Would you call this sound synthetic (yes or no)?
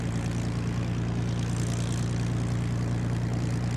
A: no